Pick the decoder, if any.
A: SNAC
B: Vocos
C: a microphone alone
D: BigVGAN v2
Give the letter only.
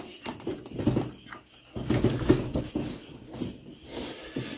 C